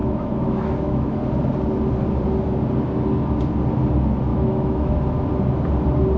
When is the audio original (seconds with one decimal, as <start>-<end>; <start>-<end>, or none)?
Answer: 1.2-4.3; 5.0-6.2